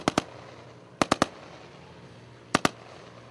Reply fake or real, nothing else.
real